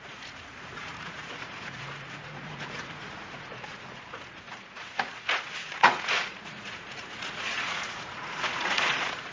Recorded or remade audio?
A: remade